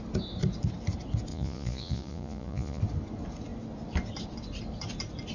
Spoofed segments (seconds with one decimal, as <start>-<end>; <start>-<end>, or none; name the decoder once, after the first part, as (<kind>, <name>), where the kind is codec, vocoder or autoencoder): 1.3-2.8 (vocoder, Vocos)